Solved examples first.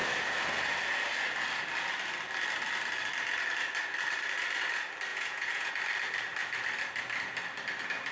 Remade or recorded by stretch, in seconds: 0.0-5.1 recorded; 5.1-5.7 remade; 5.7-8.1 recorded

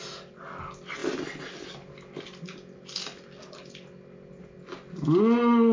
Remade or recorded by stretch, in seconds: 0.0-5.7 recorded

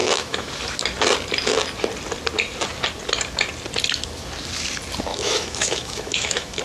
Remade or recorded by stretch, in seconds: 0.0-0.5 remade; 0.5-5.1 recorded; 5.1-6.6 remade

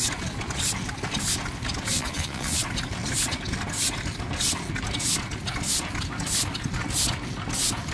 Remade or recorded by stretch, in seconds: 0.0-1.9 recorded; 1.9-2.6 remade; 2.6-7.9 recorded